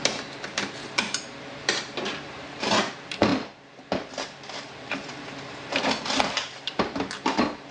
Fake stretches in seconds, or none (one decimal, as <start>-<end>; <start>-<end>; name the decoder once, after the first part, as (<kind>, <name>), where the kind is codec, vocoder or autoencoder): 0.0-7.7 (vocoder, BigVGAN v2)